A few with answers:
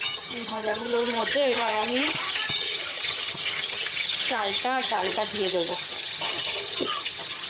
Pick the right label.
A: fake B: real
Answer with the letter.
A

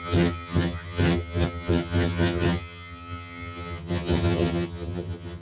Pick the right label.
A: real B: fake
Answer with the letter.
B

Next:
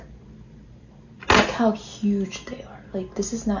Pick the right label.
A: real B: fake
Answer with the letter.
A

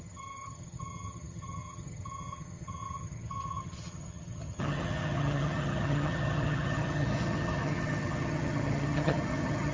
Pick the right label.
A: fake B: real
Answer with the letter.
A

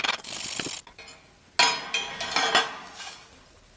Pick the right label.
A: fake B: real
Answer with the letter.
B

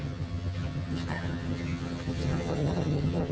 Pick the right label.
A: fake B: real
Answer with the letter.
A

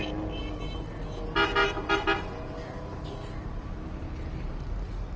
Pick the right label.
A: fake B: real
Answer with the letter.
B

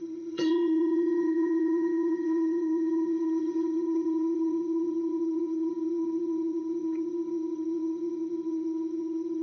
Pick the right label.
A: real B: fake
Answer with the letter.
B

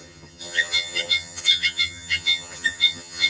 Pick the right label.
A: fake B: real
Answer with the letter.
A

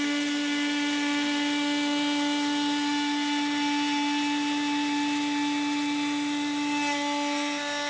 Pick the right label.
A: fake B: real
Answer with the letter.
B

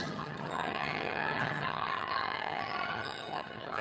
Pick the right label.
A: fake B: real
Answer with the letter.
A